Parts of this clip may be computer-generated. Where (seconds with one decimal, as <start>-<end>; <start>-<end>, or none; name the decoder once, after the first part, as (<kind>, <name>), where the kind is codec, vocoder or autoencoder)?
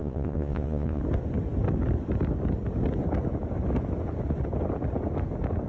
0.0-1.0 (vocoder, Vocos)